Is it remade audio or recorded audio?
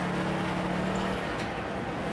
recorded